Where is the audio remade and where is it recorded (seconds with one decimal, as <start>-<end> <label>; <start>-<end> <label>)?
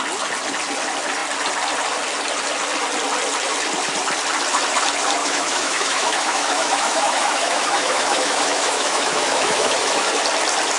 0.0-5.2 recorded; 5.2-10.1 remade; 10.1-10.8 recorded